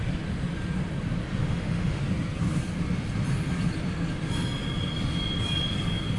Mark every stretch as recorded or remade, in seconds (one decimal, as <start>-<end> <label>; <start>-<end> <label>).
0.0-1.4 recorded; 1.4-2.0 remade; 2.0-6.2 recorded